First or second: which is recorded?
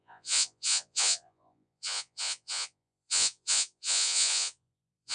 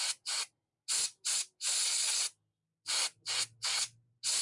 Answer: second